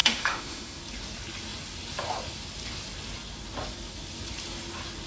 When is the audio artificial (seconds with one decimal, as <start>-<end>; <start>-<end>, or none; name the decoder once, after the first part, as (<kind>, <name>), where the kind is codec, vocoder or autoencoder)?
0.0-0.8 (autoencoder, DAC-VAE)